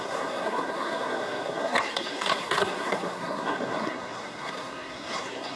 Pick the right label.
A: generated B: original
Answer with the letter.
A